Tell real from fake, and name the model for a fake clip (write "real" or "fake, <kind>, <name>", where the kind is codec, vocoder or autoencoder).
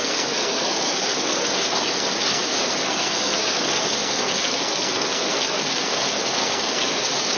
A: fake, codec, SNAC